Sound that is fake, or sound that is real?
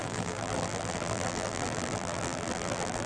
fake